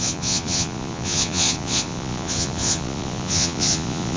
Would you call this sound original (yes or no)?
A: no